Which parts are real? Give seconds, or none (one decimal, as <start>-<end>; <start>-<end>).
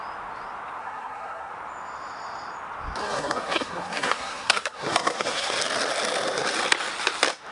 0.0-0.8; 1.5-3.0; 5.5-7.5